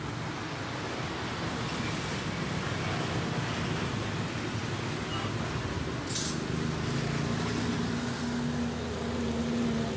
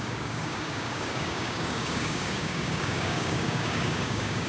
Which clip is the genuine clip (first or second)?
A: first